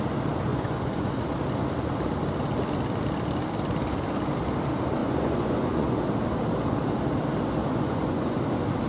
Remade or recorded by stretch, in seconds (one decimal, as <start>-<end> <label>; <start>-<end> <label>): 0.0-0.5 recorded; 0.5-1.1 remade; 1.1-5.0 recorded; 5.0-6.0 remade; 6.0-7.6 recorded; 7.6-8.4 remade; 8.4-8.9 recorded